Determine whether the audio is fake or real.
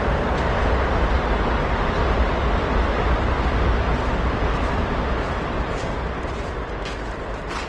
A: real